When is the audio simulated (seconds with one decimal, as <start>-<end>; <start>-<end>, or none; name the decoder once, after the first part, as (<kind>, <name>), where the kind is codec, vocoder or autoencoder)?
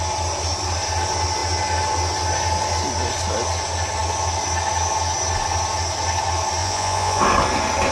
6.6-7.2 (vocoder, Vocos)